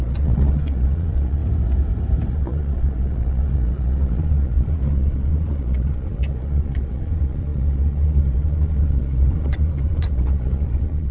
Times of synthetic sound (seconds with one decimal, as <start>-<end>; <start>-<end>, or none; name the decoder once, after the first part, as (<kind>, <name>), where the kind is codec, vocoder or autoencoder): 0.0-1.4 (vocoder, Vocos); 2.3-11.1